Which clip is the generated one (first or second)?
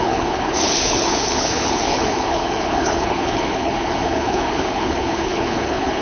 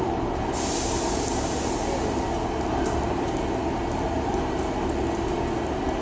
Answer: first